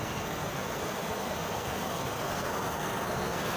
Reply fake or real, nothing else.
fake